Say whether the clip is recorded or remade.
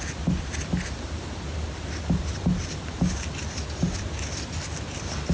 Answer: recorded